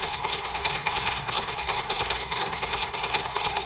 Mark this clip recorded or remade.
remade